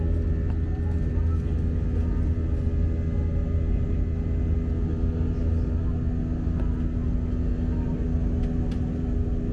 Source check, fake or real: real